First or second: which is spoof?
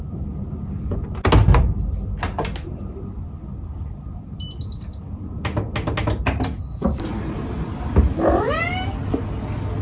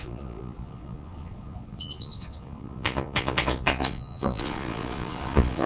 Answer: second